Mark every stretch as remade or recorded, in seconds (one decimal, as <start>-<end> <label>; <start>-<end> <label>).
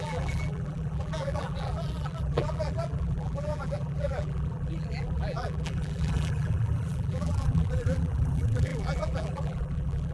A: 0.0-10.1 remade